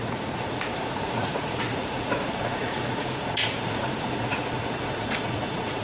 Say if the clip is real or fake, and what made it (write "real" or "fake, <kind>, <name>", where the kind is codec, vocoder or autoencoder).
fake, vocoder, Vocos